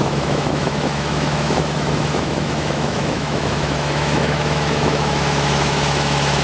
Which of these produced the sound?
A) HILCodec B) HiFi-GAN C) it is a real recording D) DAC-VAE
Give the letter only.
D